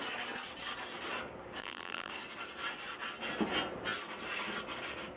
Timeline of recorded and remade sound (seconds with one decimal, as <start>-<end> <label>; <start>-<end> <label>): 0.0-1.6 recorded; 1.6-2.1 remade; 2.1-5.2 recorded